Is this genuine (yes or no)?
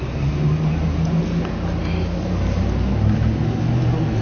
yes